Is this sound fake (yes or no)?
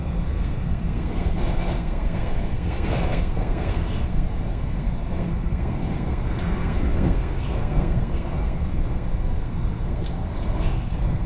yes